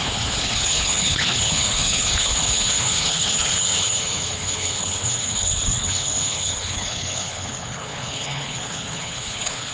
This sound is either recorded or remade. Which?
remade